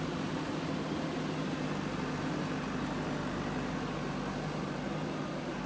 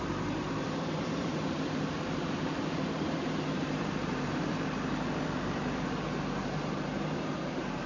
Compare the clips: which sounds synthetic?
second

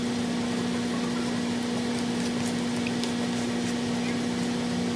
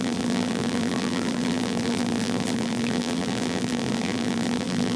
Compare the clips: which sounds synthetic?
second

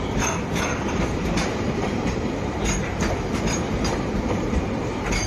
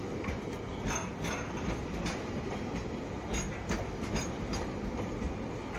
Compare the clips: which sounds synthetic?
first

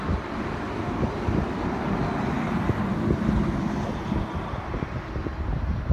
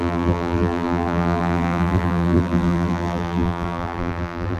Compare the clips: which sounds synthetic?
second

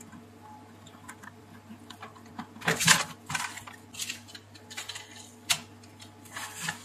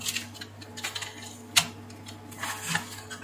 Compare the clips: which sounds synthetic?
first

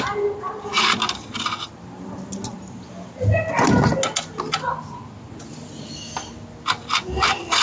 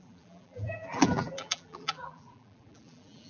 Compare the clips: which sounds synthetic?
second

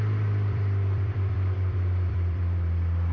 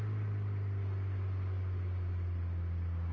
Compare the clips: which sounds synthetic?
first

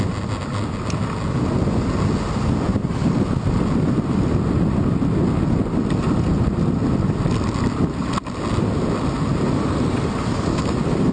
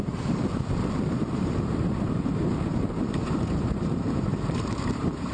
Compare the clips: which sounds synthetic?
second